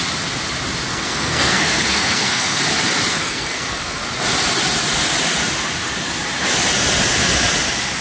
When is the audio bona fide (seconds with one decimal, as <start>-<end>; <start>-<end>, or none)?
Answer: 0.0-0.9; 2.6-3.1; 4.0-8.0